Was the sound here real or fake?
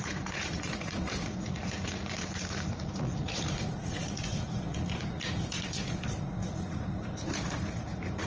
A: fake